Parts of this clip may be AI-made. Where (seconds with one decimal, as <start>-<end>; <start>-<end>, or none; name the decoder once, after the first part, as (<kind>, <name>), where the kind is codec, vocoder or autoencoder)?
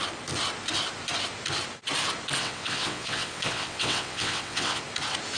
2.4-4.8 (vocoder, WaveNeXt)